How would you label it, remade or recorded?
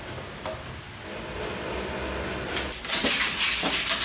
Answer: recorded